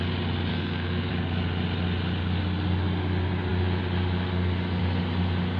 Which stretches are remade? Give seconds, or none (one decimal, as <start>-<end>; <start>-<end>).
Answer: 0.5-1.1